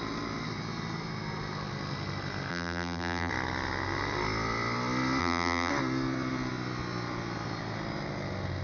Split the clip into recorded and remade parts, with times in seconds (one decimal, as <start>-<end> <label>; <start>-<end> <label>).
0.0-2.5 recorded; 2.5-3.3 remade; 3.3-5.2 recorded; 5.2-5.7 remade; 5.7-8.6 recorded